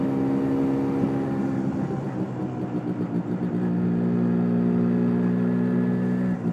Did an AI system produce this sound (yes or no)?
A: no